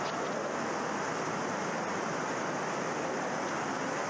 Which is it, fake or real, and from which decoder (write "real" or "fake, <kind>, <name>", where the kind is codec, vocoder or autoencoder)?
real